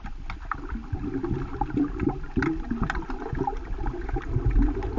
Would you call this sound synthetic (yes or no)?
no